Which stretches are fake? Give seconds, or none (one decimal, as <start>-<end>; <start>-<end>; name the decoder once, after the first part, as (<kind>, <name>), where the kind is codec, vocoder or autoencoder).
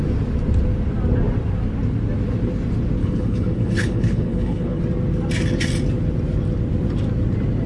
3.0-4.8 (codec, HILCodec)